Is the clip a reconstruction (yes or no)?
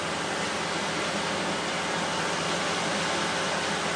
no